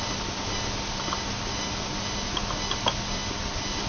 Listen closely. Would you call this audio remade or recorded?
recorded